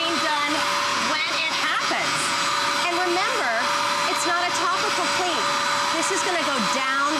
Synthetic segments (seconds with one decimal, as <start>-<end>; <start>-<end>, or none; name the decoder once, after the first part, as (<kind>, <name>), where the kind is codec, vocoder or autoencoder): 0.9-2.5 (vocoder, Vocos)